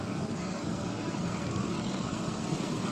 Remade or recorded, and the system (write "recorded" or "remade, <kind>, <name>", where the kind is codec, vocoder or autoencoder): remade, codec, SNAC